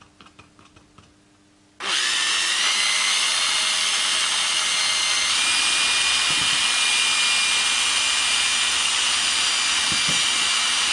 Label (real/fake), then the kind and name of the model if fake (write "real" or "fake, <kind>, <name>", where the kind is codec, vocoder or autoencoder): real